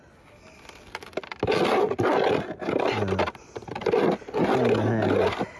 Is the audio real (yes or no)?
yes